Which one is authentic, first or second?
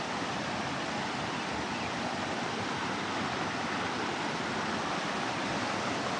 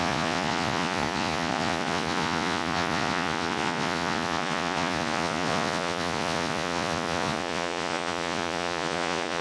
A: first